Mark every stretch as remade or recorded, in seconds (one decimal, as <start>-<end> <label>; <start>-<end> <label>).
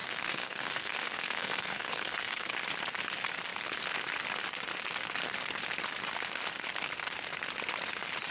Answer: 0.0-2.5 remade; 2.5-8.3 recorded